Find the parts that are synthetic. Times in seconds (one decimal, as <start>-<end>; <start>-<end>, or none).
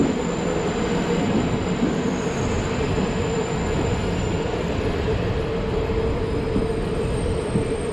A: 4.3-6.2